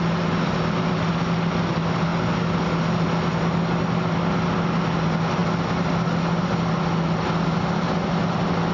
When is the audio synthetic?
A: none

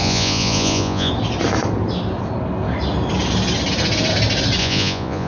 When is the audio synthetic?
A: 0.0-1.1 (vocoder, Vocos); 4.6-5.3

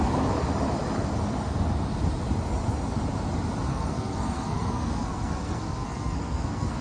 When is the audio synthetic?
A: 3.7-6.8 (codec, SNAC)

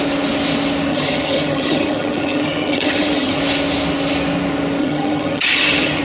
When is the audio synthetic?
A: 0.9-3.4 (vocoder, HiFi-GAN); 4.8-6.0

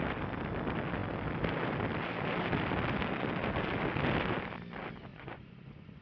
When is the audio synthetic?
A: 5.1-6.0 (vocoder, Vocos)

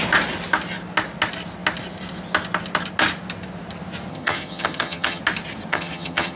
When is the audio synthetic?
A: 4.1-5.2 (vocoder, HiFi-GAN); 5.7-6.4